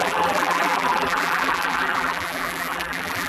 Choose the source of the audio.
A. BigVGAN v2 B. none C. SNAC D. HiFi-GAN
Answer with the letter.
A